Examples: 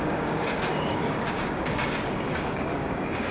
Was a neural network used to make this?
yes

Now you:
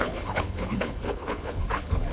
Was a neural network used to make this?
yes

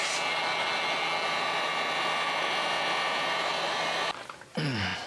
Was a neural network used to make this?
no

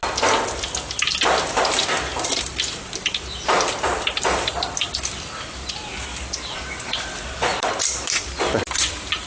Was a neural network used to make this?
no